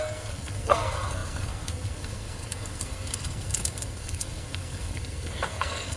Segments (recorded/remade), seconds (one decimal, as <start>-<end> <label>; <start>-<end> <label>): 0.0-6.0 remade